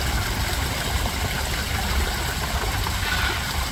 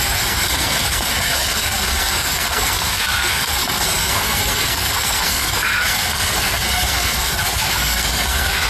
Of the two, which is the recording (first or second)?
first